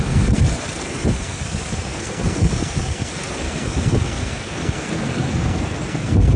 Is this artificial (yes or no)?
yes